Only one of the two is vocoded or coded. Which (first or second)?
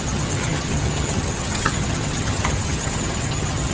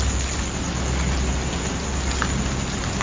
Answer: first